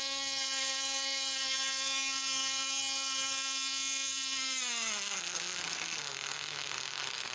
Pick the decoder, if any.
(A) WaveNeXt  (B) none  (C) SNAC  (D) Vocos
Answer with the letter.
C